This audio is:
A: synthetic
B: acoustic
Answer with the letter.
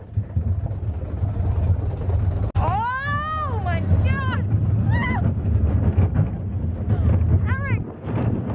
B